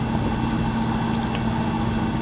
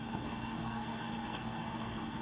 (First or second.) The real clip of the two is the first